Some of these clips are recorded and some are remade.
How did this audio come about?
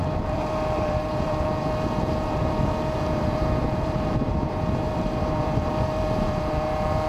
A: remade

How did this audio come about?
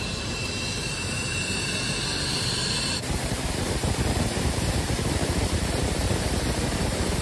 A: remade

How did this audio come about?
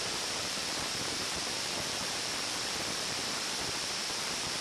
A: remade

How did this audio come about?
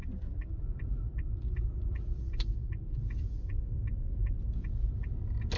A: recorded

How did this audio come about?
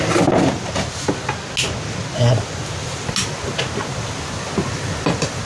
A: recorded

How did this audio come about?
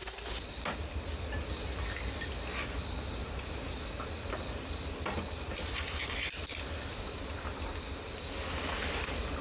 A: recorded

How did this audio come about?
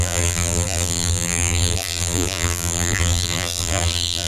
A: remade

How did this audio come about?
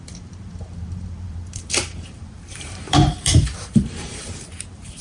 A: remade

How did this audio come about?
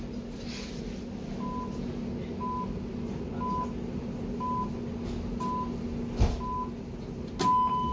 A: recorded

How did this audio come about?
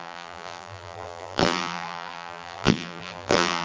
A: remade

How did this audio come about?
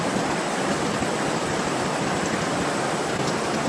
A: recorded